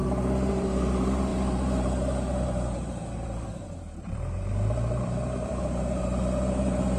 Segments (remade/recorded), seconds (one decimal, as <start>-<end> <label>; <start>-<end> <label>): 0.0-0.5 recorded; 0.5-7.0 remade